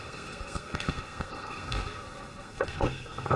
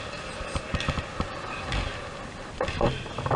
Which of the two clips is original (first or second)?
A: second